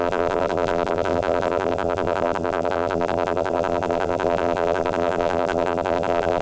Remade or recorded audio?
remade